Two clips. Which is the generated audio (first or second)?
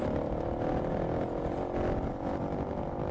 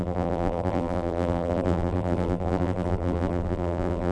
second